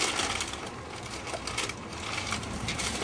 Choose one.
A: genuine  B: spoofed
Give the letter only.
A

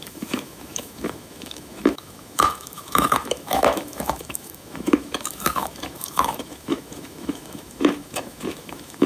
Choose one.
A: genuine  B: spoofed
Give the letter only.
B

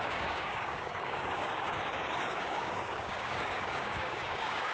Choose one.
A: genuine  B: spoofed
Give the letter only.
B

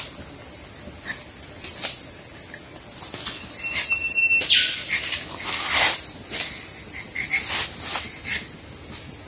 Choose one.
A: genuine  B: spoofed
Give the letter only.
A